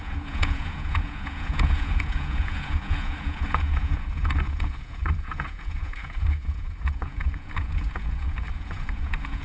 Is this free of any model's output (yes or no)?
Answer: no